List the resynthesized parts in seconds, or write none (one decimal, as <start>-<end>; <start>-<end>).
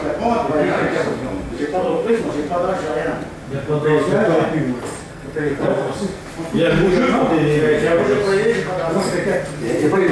0.8-2.2; 5.0-6.2